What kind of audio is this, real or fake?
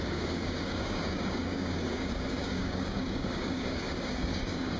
fake